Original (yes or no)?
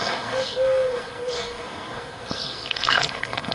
no